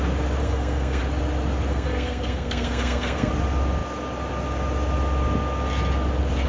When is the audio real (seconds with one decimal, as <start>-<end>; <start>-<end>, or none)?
0.0-0.4; 1.0-1.7; 3.3-6.5